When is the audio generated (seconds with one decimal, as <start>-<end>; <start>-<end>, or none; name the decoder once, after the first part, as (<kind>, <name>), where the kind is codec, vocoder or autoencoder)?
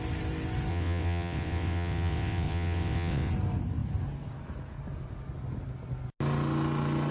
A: 0.7-3.3 (vocoder, WaveNeXt)